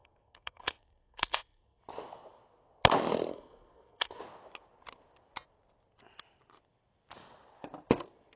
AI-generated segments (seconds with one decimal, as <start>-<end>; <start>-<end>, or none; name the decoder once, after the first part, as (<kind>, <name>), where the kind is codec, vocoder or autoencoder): 0.0-1.8 (codec, SNAC); 3.3-4.2